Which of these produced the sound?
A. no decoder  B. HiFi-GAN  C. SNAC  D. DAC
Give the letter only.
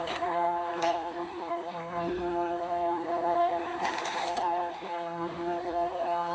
C